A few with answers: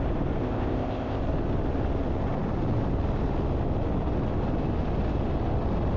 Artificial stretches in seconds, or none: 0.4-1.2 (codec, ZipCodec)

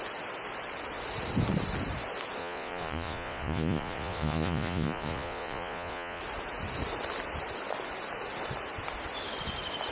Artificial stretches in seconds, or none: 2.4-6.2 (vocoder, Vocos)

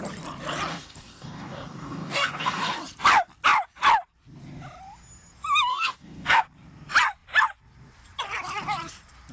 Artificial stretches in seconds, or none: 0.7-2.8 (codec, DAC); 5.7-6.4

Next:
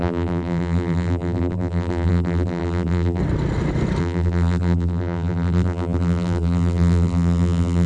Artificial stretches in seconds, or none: 0.0-3.2 (vocoder, BigVGAN v2); 4.0-7.9

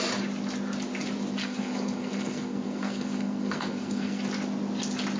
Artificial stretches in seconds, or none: 1.4-4.2 (codec, SNAC)